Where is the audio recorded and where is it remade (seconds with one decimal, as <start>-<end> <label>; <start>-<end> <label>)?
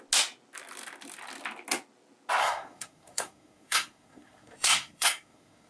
0.0-2.4 recorded; 2.4-5.7 remade